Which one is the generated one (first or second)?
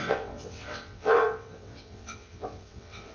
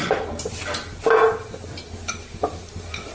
first